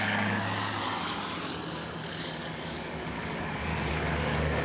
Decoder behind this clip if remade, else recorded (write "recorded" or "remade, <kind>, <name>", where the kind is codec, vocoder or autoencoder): remade, codec, DAC